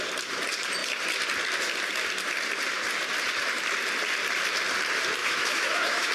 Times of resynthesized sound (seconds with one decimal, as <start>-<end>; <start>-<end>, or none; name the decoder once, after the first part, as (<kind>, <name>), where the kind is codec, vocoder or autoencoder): 5.2-6.1 (autoencoder, DAC-VAE)

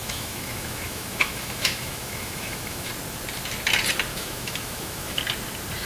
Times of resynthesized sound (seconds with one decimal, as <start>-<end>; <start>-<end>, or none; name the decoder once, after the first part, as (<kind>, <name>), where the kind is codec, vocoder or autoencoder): 0.0-2.9 (autoencoder, DAC-VAE); 4.1-5.2